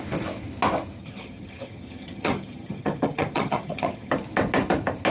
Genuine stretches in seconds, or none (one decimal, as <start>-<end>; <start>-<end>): 0.0-1.0; 4.1-5.1